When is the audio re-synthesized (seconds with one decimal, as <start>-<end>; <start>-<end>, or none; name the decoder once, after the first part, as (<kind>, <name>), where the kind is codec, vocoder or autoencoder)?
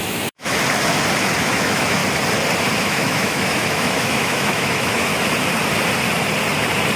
0.0-0.6 (autoencoder, DAC-VAE); 1.4-2.0; 2.8-5.1